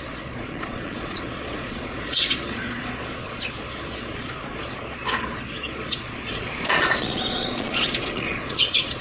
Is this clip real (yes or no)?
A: no